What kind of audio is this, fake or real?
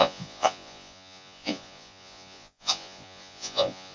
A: fake